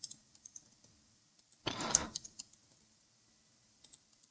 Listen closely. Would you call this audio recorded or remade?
recorded